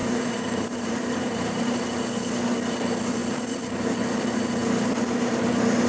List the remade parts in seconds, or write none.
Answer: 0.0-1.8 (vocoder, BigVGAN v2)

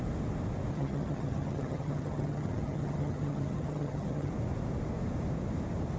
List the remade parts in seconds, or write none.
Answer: 0.7-4.3 (vocoder, HiFi-GAN)

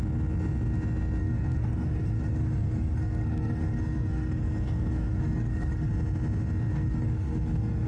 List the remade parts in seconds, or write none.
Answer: 1.2-5.9 (codec, SNAC); 6.7-7.9

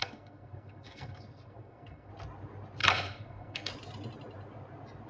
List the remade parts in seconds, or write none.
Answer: 0.0-2.1 (codec, SNAC); 2.8-3.7

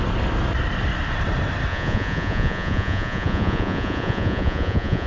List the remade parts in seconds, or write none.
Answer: 1.7-5.1 (vocoder, Vocos)

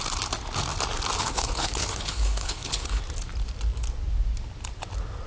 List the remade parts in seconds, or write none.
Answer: 1.2-3.0 (codec, HILCodec)